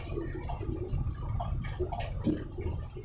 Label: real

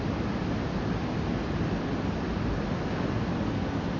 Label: real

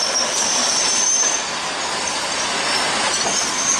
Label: real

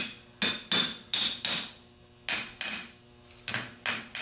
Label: real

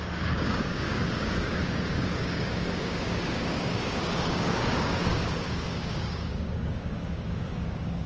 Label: fake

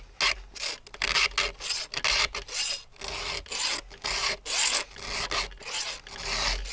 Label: real